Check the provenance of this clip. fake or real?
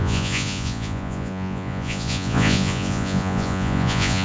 fake